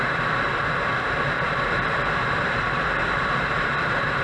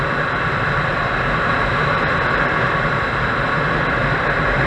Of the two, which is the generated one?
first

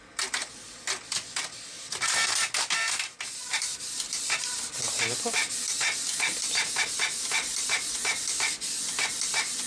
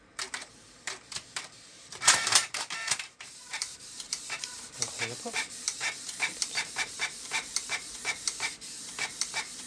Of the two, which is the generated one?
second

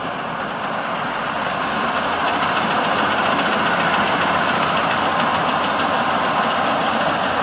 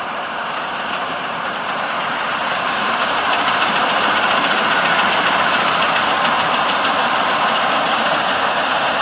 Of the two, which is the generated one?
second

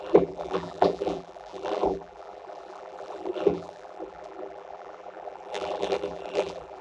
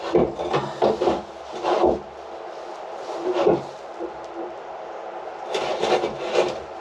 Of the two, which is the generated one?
first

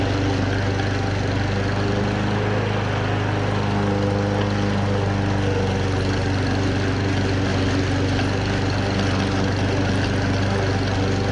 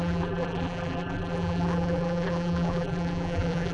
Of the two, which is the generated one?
second